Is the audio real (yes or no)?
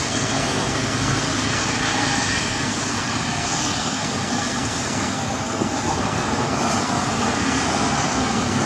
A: no